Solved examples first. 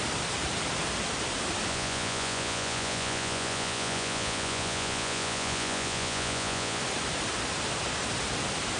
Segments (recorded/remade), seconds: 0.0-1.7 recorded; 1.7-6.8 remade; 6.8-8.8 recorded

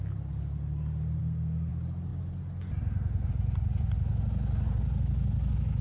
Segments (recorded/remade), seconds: 0.0-1.2 recorded; 1.2-1.7 remade; 1.7-5.8 recorded

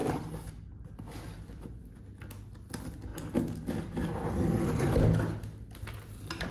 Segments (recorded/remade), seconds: 0.0-6.5 recorded